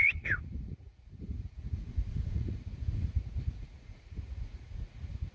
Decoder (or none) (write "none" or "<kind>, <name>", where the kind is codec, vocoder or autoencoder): vocoder, Vocos